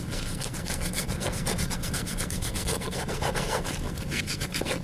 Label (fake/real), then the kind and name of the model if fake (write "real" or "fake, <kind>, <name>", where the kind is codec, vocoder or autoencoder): fake, codec, SNAC